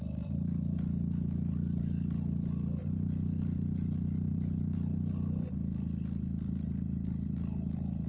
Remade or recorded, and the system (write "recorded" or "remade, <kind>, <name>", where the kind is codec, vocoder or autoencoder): remade, vocoder, BigVGAN v2